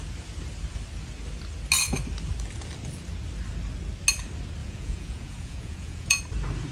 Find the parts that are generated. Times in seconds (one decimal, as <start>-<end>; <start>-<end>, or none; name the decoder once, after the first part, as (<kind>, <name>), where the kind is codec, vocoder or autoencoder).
4.6-6.2 (vocoder, Vocos)